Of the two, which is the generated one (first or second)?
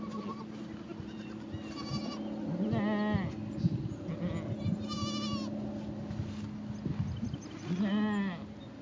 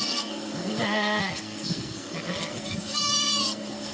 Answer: second